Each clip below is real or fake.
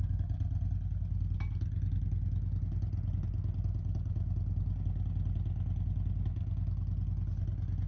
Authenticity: real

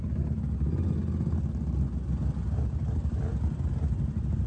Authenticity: real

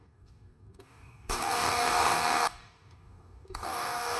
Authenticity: fake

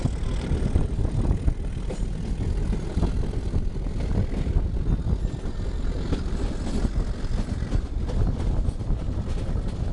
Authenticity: real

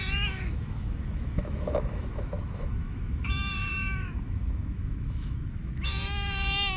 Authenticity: fake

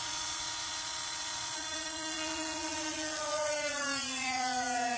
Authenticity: fake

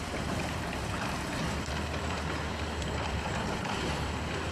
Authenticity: fake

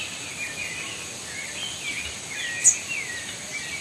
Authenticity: real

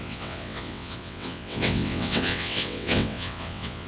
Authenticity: fake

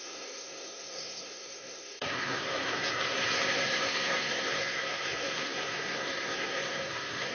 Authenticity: fake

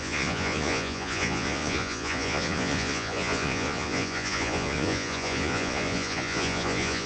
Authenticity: fake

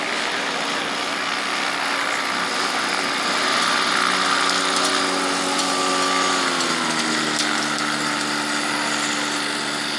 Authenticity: real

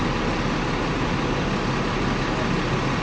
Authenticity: real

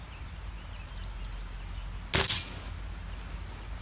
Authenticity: real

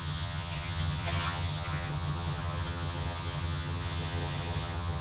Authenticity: fake